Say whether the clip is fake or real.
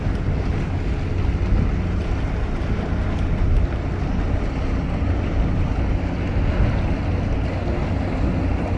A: real